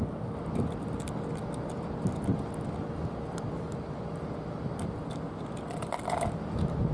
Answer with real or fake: real